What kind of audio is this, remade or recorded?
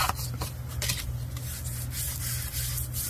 recorded